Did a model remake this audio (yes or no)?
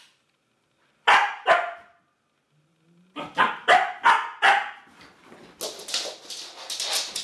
no